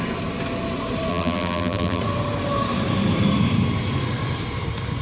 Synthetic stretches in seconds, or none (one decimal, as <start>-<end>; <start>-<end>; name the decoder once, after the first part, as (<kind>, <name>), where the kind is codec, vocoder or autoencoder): 1.1-2.0 (vocoder, BigVGAN v2)